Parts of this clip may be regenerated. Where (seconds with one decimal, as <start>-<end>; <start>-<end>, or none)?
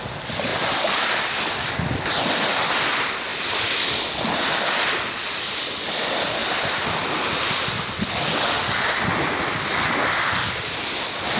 none